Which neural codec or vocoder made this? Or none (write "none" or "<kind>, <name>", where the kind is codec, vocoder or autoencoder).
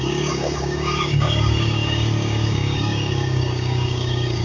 codec, DAC